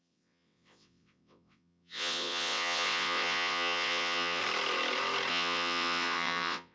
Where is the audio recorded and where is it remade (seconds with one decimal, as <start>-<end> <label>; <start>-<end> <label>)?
0.0-4.4 remade; 4.4-5.3 recorded; 5.3-6.7 remade